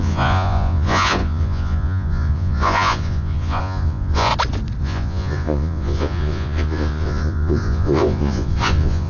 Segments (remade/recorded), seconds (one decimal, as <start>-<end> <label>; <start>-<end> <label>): 0.0-4.3 remade; 4.3-4.8 recorded; 4.8-9.1 remade